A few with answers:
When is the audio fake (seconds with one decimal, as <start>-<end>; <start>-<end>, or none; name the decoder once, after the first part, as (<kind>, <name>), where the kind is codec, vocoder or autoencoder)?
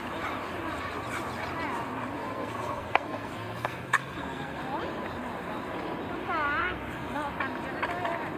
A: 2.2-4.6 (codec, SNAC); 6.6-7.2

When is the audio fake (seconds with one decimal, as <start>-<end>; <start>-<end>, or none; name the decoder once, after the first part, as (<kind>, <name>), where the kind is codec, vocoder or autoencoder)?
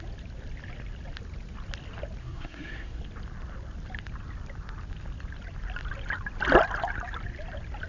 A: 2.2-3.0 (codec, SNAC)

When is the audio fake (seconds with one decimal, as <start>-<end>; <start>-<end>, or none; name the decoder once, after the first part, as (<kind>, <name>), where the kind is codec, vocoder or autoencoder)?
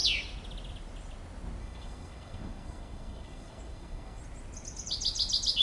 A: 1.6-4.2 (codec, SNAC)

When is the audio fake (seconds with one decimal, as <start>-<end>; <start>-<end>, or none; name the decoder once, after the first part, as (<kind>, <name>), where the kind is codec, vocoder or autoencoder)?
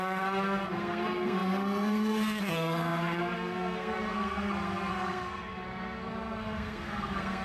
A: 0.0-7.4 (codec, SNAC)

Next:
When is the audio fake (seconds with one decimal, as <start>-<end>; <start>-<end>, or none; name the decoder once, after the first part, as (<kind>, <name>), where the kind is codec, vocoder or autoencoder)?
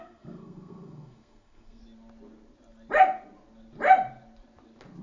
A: 0.0-1.8 (codec, SNAC)